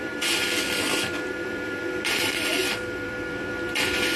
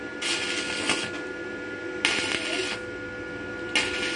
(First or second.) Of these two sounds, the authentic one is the second